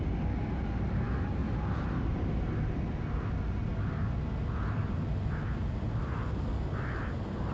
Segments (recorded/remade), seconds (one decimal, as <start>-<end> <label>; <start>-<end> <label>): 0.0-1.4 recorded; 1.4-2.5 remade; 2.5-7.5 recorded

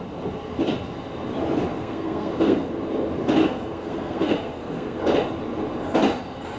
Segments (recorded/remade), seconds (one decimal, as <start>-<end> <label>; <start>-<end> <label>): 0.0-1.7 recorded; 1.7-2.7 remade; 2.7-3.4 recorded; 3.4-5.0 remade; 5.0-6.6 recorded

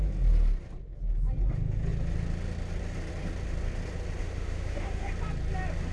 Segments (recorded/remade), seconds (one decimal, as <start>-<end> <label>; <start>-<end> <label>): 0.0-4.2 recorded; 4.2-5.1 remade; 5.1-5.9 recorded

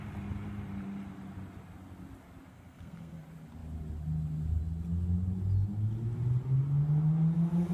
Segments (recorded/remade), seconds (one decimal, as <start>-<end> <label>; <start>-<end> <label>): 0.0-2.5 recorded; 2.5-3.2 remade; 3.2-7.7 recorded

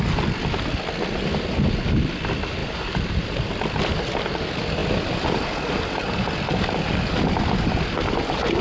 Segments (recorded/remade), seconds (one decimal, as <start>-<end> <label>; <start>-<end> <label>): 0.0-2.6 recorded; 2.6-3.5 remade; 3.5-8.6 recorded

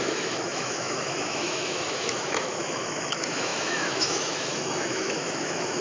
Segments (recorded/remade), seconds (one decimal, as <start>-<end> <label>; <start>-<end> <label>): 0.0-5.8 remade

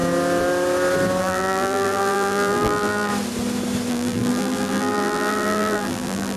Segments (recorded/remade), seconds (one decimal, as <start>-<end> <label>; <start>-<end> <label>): 0.0-1.2 recorded; 1.2-3.1 remade; 3.1-3.9 recorded; 3.9-6.4 remade